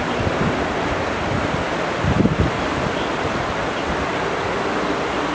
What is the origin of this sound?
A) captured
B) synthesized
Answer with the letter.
B